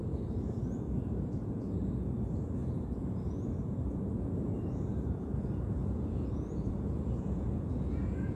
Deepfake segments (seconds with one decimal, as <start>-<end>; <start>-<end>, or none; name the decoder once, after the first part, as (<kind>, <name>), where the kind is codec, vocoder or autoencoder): 0.7-8.4 (vocoder, Vocos)